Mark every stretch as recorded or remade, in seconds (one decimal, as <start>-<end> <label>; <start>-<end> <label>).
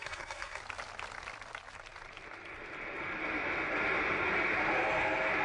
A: 0.0-0.6 remade; 0.6-5.4 recorded